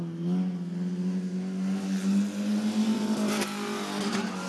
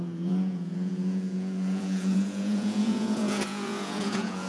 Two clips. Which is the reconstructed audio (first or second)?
second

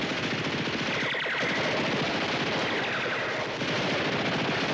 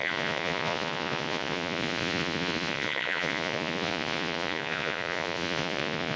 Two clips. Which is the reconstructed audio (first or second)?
second